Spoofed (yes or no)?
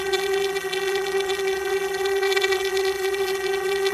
yes